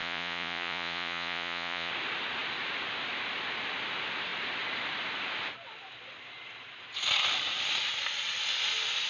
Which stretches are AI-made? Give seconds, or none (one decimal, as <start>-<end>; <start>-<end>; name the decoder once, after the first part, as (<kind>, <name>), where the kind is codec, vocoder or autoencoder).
0.0-1.9 (vocoder, Vocos)